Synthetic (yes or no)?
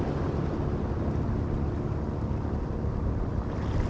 no